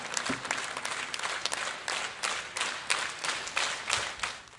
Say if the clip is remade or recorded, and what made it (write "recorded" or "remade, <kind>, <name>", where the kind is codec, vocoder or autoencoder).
recorded